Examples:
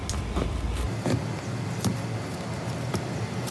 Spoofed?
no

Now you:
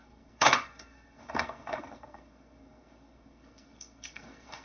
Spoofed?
yes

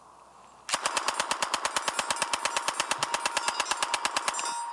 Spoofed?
no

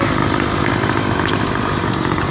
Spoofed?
no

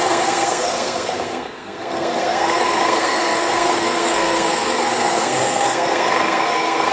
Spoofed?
yes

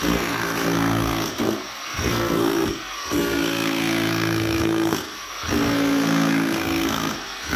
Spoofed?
yes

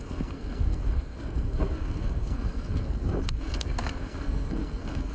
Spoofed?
yes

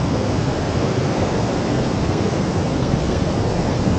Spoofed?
yes